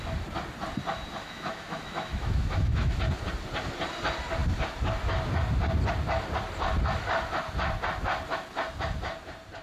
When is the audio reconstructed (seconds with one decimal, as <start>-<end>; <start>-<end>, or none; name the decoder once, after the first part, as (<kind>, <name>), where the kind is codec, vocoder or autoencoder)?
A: 1.2-3.0 (autoencoder, DAC-VAE)